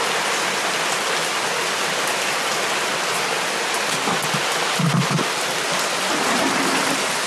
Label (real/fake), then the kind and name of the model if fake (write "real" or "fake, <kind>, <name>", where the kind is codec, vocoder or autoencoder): real